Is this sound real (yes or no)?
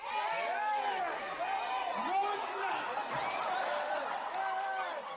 yes